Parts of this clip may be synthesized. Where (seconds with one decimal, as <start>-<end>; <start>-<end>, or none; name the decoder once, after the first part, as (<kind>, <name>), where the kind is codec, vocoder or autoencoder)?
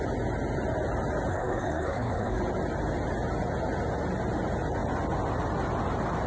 1.3-2.4 (codec, SNAC)